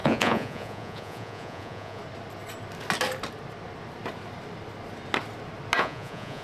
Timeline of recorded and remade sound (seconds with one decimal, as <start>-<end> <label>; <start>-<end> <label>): 0.0-2.0 remade; 2.0-5.8 recorded; 5.8-6.4 remade